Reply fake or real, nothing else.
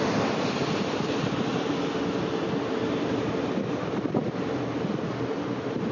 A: real